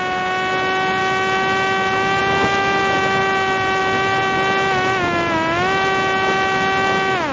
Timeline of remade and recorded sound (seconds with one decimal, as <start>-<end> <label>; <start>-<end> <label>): 0.0-7.3 recorded